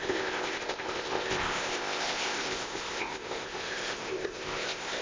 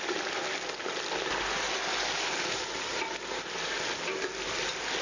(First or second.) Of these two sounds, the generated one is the first